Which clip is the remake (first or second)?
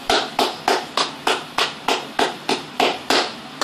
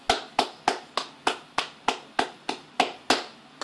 first